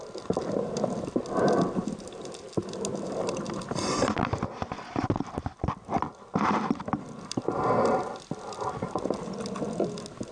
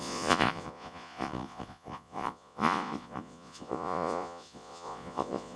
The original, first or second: first